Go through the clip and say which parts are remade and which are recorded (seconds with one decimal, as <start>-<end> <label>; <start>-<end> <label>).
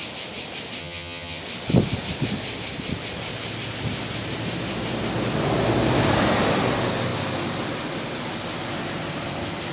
0.0-0.8 recorded; 0.8-1.4 remade; 1.4-9.7 recorded